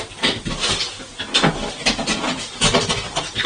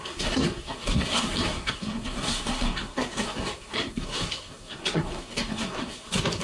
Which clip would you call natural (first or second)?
first